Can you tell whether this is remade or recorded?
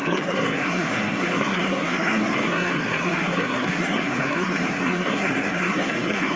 remade